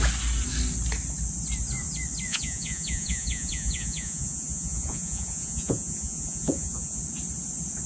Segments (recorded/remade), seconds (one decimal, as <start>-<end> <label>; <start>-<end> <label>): 0.0-2.3 recorded; 2.3-7.0 remade; 7.0-7.9 recorded